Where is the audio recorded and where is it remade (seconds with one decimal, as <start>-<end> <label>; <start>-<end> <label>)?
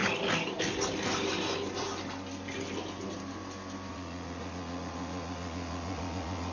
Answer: 0.0-3.9 recorded; 3.9-6.5 remade